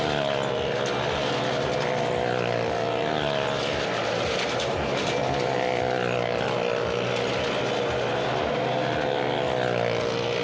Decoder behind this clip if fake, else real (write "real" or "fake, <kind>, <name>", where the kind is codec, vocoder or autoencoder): real